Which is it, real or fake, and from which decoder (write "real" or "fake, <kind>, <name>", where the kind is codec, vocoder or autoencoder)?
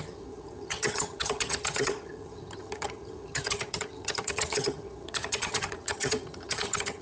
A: fake, vocoder, HiFi-GAN